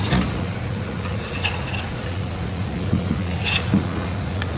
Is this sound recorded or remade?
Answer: remade